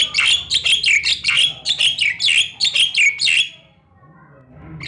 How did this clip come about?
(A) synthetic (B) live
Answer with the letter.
B